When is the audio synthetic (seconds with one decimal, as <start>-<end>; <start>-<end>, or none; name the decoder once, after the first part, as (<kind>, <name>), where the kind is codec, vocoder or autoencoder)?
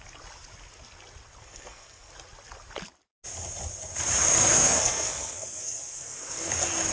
1.4-2.1 (codec, SNAC); 4.3-6.5